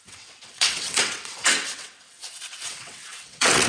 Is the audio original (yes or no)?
no